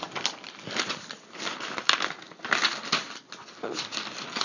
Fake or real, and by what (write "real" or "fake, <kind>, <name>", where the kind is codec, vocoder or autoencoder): real